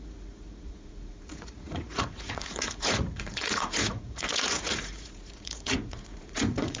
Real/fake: fake